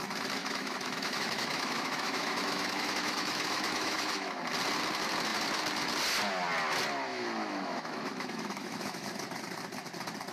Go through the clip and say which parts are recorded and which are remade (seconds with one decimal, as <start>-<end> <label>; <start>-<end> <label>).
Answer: 0.0-0.4 recorded; 0.4-4.4 remade; 4.4-7.1 recorded; 7.1-9.1 remade; 9.1-10.3 recorded